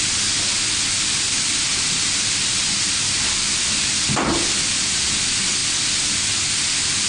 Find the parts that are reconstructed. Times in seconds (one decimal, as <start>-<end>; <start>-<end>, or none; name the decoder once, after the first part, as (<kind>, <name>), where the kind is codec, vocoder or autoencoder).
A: none